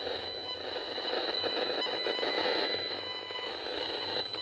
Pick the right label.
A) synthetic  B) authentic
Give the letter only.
A